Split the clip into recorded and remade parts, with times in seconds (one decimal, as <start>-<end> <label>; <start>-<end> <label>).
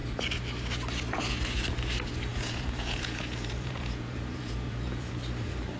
0.0-2.3 recorded; 2.3-5.1 remade; 5.1-5.8 recorded